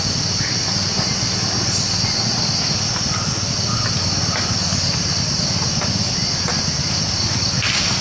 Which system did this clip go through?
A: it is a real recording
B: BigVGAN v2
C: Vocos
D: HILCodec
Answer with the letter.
A